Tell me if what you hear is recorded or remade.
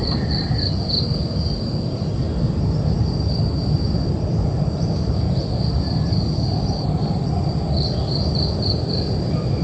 recorded